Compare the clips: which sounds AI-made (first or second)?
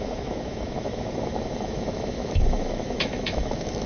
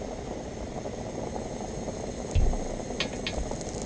first